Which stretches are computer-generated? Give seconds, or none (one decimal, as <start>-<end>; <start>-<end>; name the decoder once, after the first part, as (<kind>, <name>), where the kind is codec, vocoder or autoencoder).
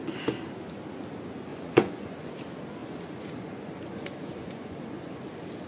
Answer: 1.5-2.3 (vocoder, Vocos); 2.8-5.2